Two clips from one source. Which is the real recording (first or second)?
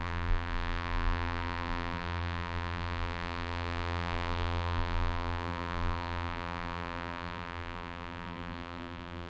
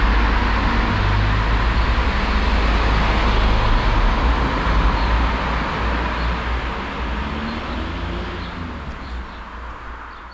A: second